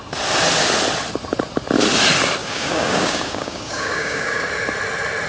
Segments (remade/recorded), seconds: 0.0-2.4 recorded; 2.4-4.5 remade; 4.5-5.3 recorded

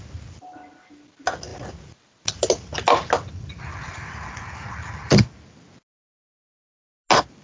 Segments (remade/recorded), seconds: 0.0-7.4 recorded

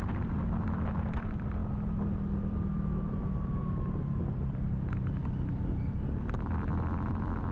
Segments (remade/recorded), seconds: 0.0-1.6 remade; 1.6-2.5 recorded; 2.5-3.6 remade; 3.6-4.2 recorded; 4.2-7.5 remade

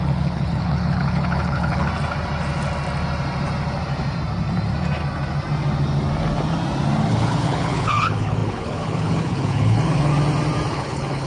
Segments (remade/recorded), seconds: 0.0-1.9 remade; 1.9-7.1 recorded; 7.1-10.1 remade; 10.1-10.7 recorded; 10.7-11.3 remade

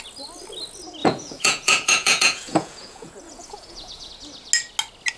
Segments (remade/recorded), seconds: 0.0-1.0 recorded; 1.0-4.1 remade; 4.1-5.2 recorded

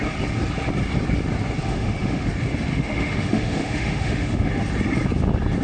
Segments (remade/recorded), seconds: 0.0-1.7 recorded; 1.7-2.3 remade; 2.3-2.7 recorded; 2.7-4.5 remade; 4.5-5.6 recorded

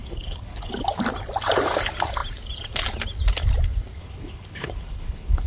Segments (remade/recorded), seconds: 0.0-0.7 remade; 0.7-4.0 recorded; 4.0-5.5 remade

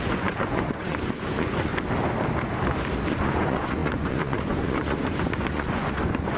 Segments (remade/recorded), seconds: 0.0-1.7 remade; 1.7-3.1 recorded; 3.1-6.4 remade